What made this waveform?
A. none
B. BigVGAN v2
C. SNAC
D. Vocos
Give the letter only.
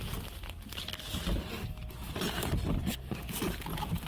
A